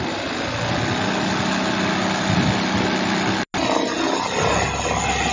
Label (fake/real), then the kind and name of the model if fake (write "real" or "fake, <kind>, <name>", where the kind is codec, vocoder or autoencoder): real